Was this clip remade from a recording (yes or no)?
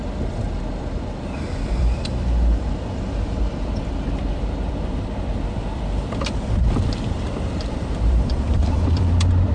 yes